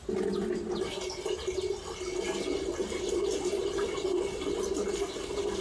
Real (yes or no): yes